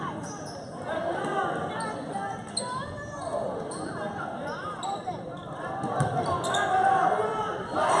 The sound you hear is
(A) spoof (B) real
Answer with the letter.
B